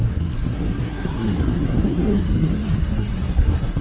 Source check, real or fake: fake